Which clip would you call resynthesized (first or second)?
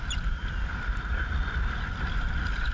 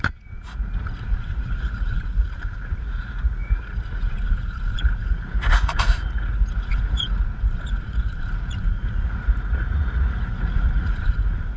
second